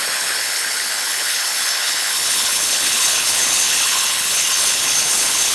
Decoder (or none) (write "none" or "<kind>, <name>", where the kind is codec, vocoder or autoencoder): codec, HILCodec